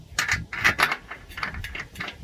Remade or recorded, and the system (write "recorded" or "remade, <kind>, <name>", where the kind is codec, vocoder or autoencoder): recorded